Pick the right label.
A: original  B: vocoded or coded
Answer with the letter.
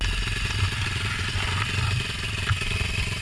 A